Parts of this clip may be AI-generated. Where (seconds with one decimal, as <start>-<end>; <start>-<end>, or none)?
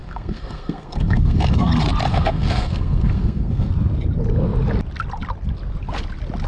0.0-1.7; 2.1-3.7